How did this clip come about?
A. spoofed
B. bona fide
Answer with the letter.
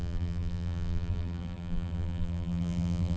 A